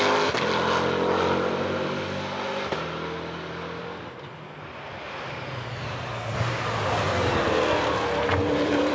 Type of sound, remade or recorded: recorded